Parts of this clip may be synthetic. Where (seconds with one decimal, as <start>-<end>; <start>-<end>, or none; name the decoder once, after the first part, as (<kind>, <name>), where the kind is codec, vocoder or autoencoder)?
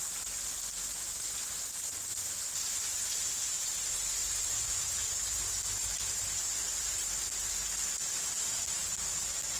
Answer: 2.1-6.2 (vocoder, BigVGAN v2)